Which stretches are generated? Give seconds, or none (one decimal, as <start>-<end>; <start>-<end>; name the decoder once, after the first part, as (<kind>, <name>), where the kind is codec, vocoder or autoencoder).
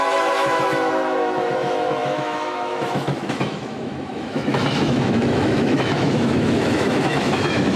0.0-7.8 (autoencoder, DAC-VAE)